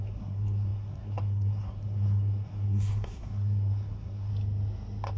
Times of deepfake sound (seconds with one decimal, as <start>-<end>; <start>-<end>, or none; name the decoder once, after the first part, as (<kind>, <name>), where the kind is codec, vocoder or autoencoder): 0.0-4.3 (codec, SNAC)